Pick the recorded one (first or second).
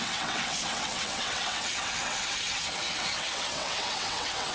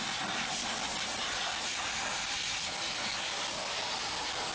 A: second